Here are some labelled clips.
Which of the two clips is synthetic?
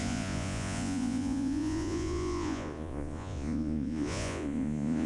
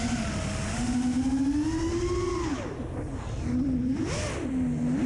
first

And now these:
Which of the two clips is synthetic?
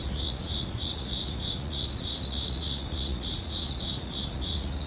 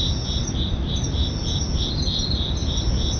first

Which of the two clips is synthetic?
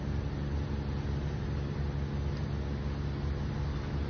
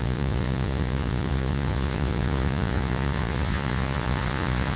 second